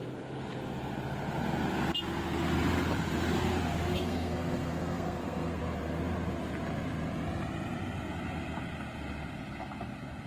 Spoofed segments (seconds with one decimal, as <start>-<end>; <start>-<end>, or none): 3.9-5.6